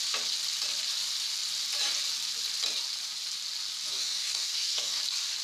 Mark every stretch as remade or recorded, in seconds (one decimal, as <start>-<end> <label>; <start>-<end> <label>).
0.0-3.9 recorded; 3.9-5.0 remade; 5.0-5.4 recorded